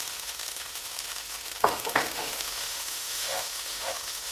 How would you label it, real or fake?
fake